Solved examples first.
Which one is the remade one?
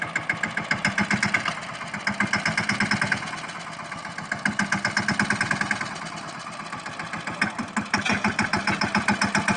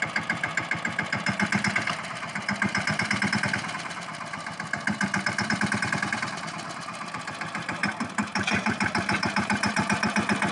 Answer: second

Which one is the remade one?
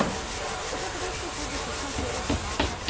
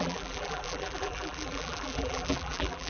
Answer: second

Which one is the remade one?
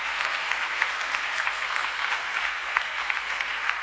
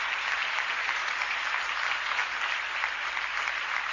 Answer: first